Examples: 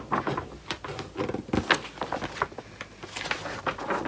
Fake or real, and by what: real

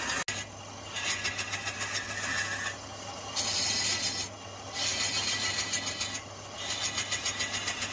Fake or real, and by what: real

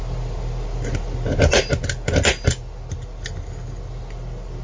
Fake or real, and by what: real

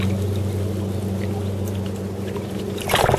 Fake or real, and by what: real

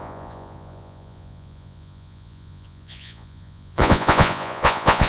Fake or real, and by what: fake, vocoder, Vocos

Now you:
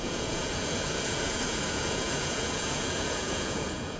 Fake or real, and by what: fake, vocoder, Vocos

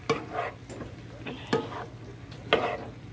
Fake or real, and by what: real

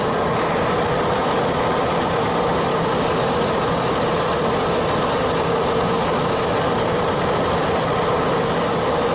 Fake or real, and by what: real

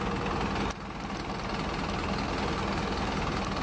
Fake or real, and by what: real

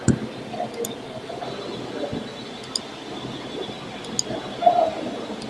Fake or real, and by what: real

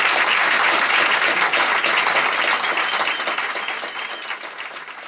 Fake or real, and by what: real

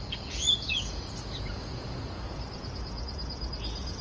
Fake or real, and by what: fake, vocoder, Vocos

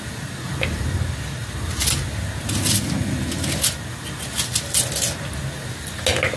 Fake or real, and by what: real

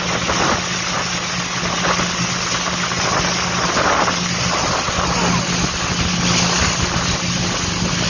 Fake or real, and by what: real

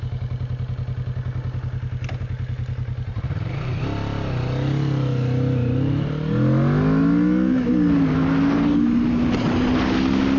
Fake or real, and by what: real